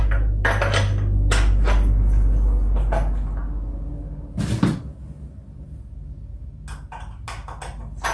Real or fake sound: real